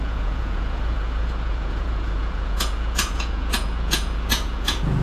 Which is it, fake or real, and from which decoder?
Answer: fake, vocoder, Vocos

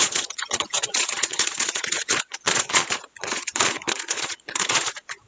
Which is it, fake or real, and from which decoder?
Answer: fake, vocoder, Vocos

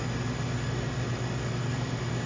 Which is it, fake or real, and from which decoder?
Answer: real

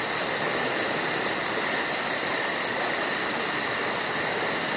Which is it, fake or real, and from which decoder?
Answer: real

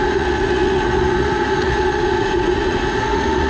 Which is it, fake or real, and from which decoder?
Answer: fake, vocoder, Vocos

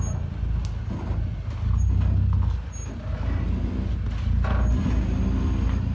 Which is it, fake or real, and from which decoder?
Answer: real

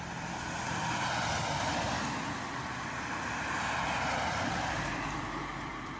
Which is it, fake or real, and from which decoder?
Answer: real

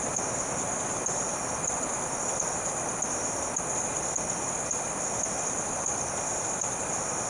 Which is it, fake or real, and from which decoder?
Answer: real